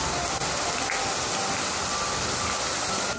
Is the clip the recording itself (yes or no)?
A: yes